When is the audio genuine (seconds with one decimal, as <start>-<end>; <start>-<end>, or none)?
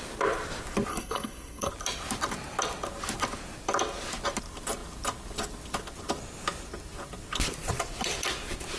0.0-0.9; 1.7-8.8